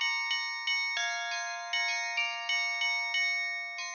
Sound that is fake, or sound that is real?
real